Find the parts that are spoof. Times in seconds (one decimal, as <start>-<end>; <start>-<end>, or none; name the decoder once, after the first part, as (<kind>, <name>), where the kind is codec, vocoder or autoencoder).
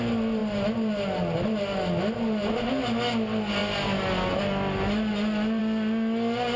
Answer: none